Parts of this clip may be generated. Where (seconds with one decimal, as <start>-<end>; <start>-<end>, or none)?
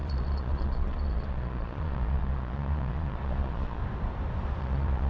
0.0-3.8; 4.6-5.1